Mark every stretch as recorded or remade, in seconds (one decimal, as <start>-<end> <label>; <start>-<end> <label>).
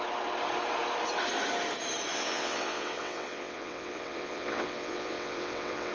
0.0-2.1 recorded; 2.1-5.9 remade